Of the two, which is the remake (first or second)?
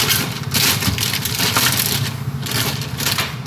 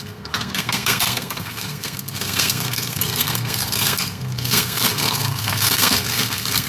second